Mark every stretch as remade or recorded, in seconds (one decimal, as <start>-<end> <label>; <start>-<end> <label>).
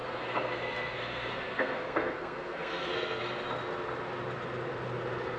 0.0-3.2 remade; 3.2-5.4 recorded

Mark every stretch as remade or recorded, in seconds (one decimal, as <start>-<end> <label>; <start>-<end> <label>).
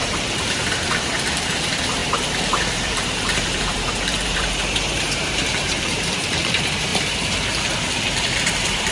0.0-6.9 remade; 6.9-8.4 recorded; 8.4-8.9 remade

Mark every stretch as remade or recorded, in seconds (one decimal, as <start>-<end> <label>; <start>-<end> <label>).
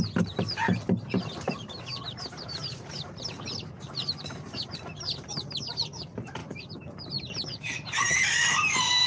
0.0-9.1 remade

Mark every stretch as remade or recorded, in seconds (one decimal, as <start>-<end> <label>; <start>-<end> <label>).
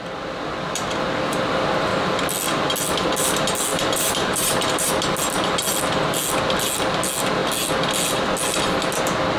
0.0-3.7 recorded; 3.7-4.9 remade; 4.9-9.4 recorded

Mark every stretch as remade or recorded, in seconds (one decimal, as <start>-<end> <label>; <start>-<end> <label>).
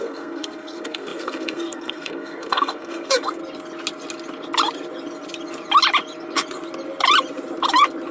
0.0-3.4 remade; 3.4-8.1 recorded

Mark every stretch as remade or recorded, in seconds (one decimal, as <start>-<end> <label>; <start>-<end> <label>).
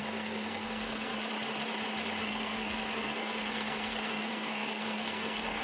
0.0-1.1 remade; 1.1-2.2 recorded; 2.2-5.6 remade